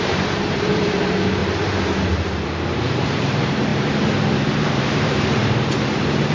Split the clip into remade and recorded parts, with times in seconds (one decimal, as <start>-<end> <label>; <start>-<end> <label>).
0.0-1.4 remade; 1.4-2.0 recorded; 2.0-3.7 remade; 3.7-4.6 recorded; 4.6-6.3 remade